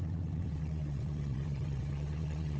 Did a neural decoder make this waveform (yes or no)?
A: yes